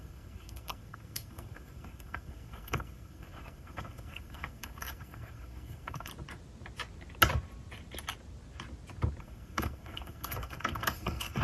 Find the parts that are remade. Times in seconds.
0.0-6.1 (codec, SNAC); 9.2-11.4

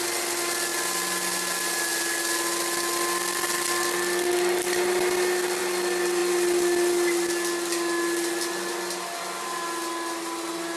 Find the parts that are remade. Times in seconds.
none

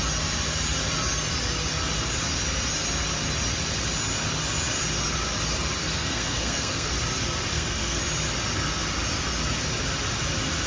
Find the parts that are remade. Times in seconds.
5.8-6.9 (codec, SNAC); 7.5-8.0

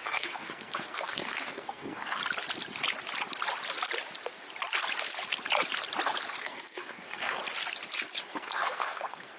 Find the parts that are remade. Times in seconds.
0.0-2.2 (codec, SNAC); 6.4-7.4; 8.2-9.4

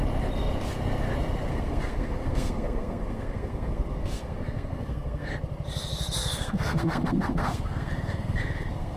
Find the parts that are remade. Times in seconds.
1.5-5.3 (codec, SNAC); 6.2-9.0

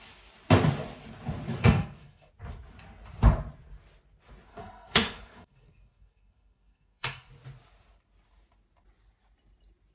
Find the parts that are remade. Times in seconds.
1.6-2.3 (codec, SNAC); 4.5-7.3

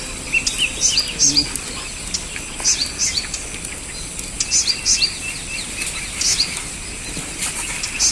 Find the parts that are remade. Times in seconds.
none

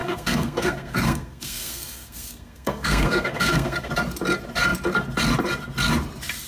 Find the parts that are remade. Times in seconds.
0.0-3.9 (codec, SNAC)